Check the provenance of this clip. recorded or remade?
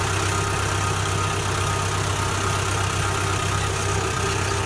recorded